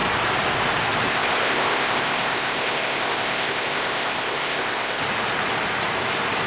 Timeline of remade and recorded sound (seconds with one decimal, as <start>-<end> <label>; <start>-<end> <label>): 0.0-1.1 recorded; 1.1-5.0 remade; 5.0-6.5 recorded